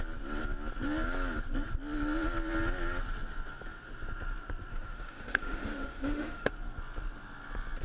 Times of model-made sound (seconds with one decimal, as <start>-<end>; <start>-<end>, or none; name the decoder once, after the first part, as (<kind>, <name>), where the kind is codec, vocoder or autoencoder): 4.7-6.5 (autoencoder, DAC-VAE)